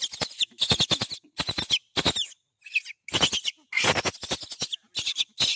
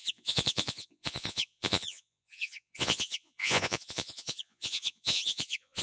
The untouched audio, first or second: first